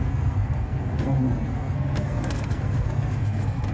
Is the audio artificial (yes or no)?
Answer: yes